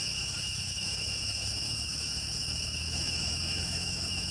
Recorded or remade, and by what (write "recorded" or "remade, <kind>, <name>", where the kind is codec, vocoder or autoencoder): remade, autoencoder, DAC-VAE